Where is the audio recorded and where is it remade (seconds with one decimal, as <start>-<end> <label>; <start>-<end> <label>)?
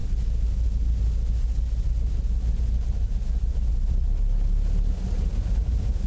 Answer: 0.0-6.1 recorded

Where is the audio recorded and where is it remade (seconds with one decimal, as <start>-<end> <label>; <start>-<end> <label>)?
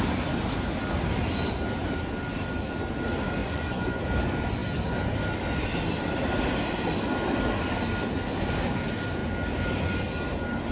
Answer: 0.0-3.4 recorded; 3.4-4.0 remade; 4.0-10.7 recorded